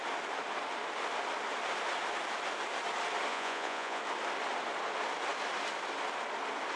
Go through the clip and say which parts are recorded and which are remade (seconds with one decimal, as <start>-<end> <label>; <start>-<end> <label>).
0.0-3.3 recorded; 3.3-4.0 remade; 4.0-6.8 recorded